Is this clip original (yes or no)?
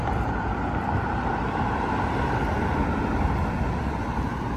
yes